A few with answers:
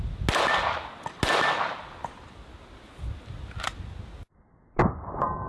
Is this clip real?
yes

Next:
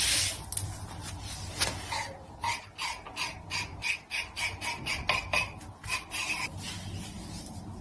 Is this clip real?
yes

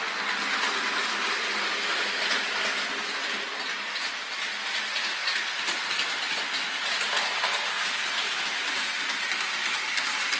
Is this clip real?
yes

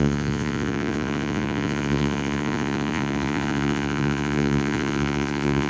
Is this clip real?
no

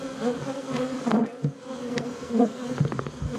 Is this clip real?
no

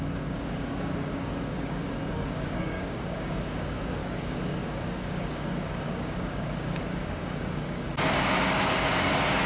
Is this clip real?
no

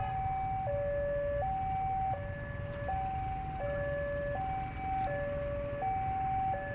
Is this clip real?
yes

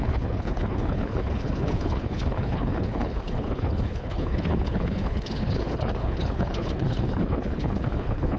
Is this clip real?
no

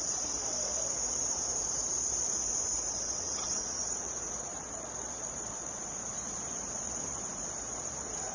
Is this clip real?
no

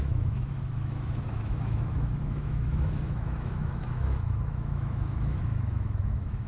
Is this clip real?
no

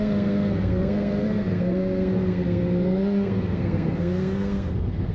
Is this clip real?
no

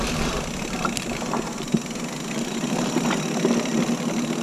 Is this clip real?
yes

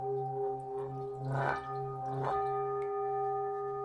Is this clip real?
yes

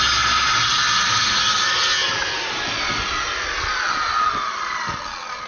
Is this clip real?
yes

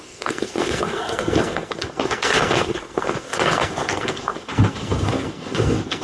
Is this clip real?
no